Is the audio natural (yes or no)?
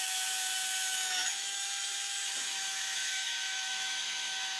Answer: no